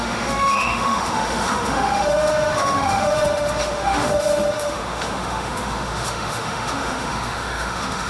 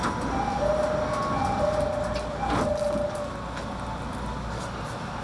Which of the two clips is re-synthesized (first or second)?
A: first